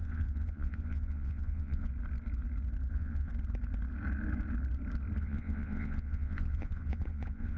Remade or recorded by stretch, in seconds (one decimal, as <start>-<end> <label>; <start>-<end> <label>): 0.0-1.9 remade; 1.9-2.9 recorded; 2.9-3.3 remade; 3.3-5.2 recorded; 5.2-7.6 remade